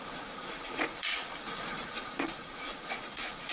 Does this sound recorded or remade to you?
remade